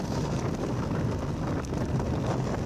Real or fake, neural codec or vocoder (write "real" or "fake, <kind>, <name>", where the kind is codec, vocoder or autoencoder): real